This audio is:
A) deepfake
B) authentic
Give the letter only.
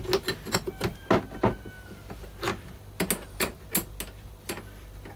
B